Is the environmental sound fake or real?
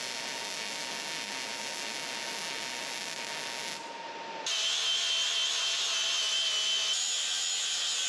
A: real